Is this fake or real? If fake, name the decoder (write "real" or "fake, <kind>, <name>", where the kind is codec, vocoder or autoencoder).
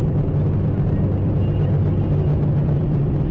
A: real